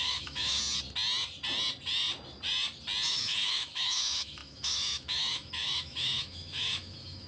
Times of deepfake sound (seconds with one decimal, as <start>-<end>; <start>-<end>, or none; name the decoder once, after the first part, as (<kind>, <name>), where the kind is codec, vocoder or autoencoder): 0.0-0.6 (autoencoder, DAC-VAE); 3.1-7.3